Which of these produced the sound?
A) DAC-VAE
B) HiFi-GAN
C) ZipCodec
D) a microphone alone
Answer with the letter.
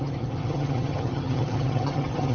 B